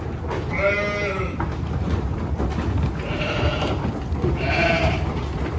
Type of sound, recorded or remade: recorded